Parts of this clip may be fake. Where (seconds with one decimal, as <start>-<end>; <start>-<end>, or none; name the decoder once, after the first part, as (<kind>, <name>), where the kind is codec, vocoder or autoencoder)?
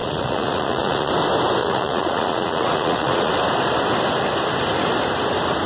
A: 0.0-1.1 (vocoder, Vocos); 1.6-3.3